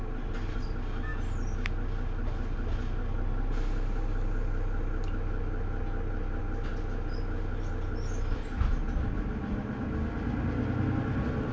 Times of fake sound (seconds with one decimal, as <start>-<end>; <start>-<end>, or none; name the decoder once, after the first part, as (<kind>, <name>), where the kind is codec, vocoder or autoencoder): none